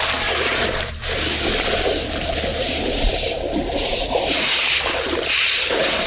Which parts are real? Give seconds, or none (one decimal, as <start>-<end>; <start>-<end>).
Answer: 0.0-2.5